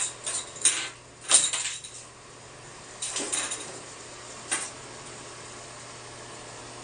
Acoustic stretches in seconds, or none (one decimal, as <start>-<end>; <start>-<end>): 0.0-2.7; 4.7-6.8